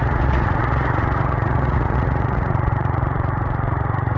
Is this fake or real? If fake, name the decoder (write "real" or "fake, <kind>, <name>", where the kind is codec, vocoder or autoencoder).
fake, vocoder, Vocos